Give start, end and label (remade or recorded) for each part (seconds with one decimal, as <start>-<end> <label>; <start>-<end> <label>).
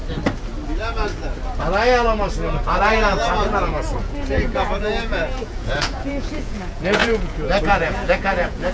0.0-3.6 recorded; 3.6-8.7 remade